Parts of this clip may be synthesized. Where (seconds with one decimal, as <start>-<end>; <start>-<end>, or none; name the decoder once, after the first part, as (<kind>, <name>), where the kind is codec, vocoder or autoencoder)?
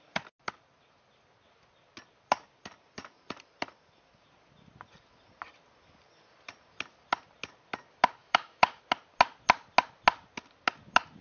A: 8.2-8.8 (autoencoder, DAC-VAE)